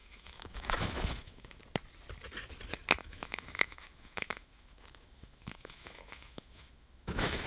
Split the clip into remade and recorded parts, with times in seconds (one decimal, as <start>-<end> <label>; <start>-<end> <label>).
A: 0.0-1.6 remade; 1.6-3.0 recorded; 3.0-7.5 remade

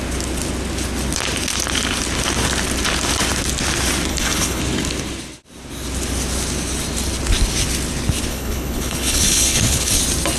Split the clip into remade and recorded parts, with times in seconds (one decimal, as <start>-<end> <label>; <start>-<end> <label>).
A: 0.0-4.1 recorded; 4.1-4.6 remade; 4.6-8.3 recorded; 8.3-10.0 remade; 10.0-10.4 recorded

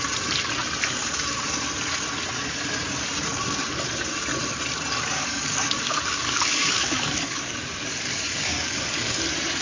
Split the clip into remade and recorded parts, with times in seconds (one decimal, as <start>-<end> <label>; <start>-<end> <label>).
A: 0.0-5.2 recorded; 5.2-9.2 remade; 9.2-9.6 recorded